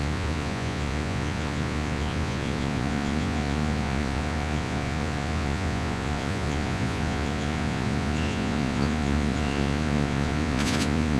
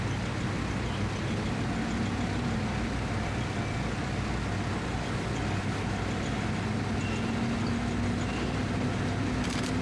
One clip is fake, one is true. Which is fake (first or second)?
first